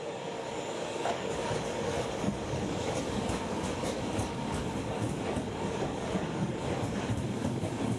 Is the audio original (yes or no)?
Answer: no